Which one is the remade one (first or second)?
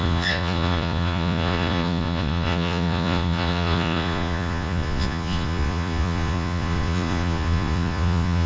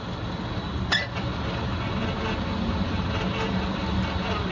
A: first